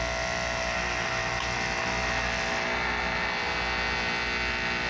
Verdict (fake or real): real